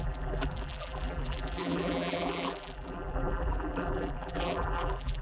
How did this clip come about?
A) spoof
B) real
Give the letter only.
A